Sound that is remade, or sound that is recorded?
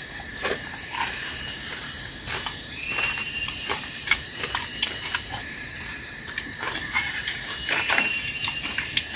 remade